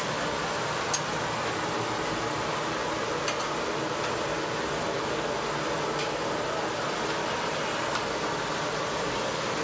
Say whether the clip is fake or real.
real